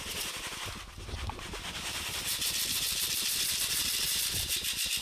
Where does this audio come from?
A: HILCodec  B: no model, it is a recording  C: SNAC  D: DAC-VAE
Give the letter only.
B